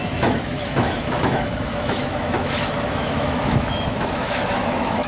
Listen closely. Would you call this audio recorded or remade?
remade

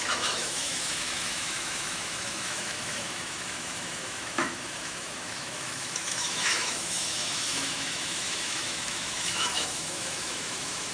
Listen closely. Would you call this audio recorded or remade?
remade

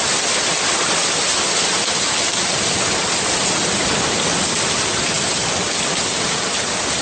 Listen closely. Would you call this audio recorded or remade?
recorded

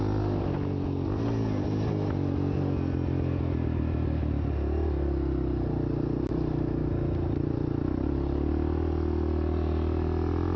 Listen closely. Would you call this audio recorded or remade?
recorded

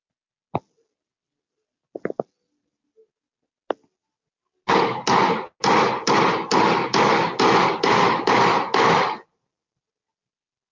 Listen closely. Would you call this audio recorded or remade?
recorded